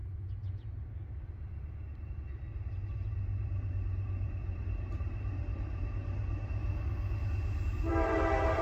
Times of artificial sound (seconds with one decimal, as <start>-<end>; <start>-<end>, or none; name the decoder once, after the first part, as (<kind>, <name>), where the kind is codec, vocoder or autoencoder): 2.1-6.6 (vocoder, BigVGAN v2); 7.9-8.6